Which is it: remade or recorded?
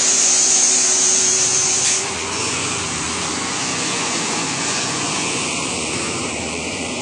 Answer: remade